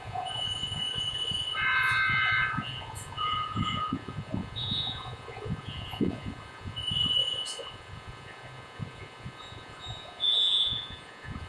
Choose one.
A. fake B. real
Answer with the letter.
A